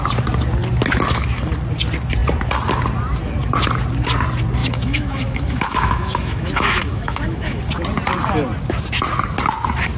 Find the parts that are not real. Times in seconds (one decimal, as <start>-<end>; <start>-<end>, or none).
4.6-7.6